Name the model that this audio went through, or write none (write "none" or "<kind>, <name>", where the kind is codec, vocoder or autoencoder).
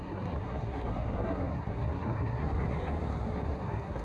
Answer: codec, SNAC